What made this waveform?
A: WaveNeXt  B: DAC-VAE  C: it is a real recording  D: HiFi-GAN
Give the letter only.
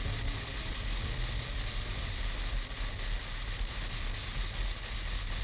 C